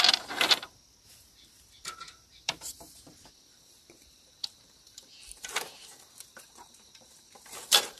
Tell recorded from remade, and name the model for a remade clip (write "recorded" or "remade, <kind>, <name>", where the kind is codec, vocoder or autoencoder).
remade, vocoder, BigVGAN v2